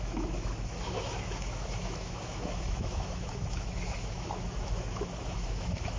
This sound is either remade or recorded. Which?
remade